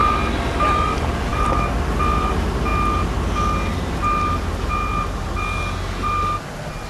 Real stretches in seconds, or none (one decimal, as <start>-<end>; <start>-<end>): 0.0-6.9

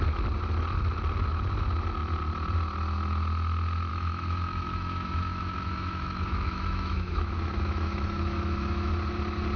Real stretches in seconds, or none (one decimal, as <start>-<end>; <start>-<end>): 0.0-3.9; 8.9-9.6

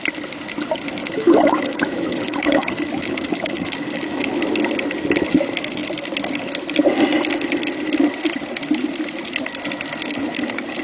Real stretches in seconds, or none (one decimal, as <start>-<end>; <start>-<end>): 0.0-1.0; 4.4-10.8